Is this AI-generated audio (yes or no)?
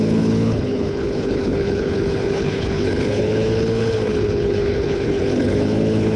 yes